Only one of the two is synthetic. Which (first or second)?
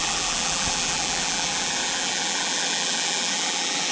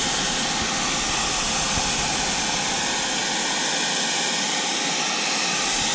first